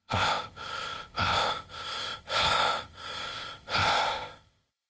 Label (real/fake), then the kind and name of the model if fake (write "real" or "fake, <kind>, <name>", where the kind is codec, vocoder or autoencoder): fake, codec, ZipCodec